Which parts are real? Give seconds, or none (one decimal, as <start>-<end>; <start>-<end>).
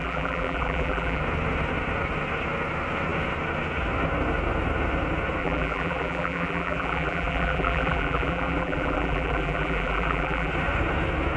1.2-5.4; 10.5-11.4